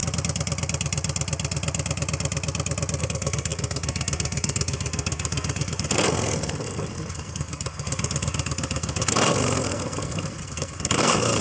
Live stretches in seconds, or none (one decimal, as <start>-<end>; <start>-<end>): 0.0-3.0